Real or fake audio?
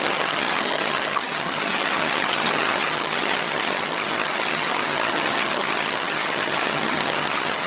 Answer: fake